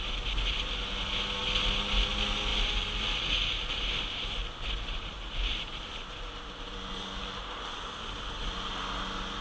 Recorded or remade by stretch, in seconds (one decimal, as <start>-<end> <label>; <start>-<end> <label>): 0.0-9.4 recorded